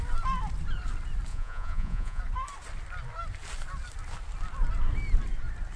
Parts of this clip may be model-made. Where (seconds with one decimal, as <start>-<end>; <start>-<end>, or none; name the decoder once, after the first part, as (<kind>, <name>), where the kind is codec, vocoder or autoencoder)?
1.3-2.2 (vocoder, Vocos)